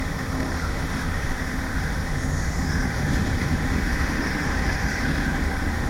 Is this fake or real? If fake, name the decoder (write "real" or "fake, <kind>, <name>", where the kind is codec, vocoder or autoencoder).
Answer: fake, autoencoder, DAC-VAE